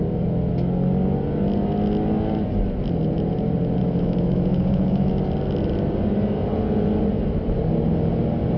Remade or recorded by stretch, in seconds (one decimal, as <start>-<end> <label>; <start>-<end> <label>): 0.0-3.8 recorded; 3.8-5.1 remade; 5.1-8.6 recorded